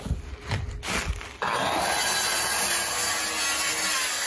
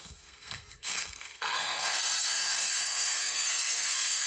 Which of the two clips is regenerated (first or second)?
second